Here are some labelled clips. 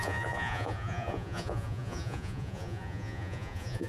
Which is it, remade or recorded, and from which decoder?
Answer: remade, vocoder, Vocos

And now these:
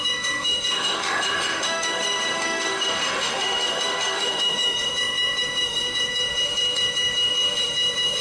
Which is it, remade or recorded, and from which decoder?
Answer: remade, autoencoder, DAC-VAE